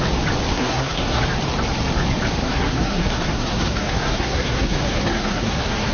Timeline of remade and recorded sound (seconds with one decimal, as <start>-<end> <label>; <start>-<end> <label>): 0.0-0.5 recorded; 0.5-1.2 remade; 1.2-2.4 recorded; 2.4-5.9 remade